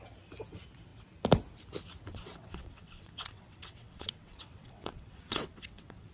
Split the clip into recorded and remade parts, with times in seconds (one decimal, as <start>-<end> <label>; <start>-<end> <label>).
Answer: 0.0-2.1 recorded; 2.1-6.1 remade